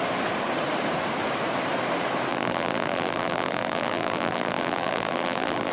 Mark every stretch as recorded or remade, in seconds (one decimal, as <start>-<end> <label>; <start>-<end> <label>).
0.0-2.3 recorded; 2.3-5.7 remade